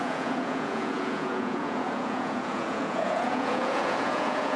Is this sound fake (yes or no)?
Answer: yes